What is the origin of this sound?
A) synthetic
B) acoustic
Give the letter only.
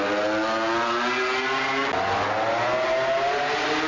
B